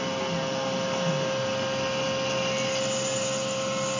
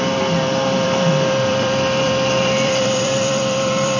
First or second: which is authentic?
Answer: first